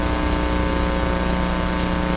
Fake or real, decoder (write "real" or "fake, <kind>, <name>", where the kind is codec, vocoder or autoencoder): real